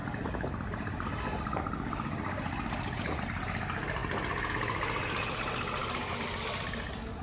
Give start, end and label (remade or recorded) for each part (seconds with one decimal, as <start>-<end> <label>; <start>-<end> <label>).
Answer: 0.0-7.2 recorded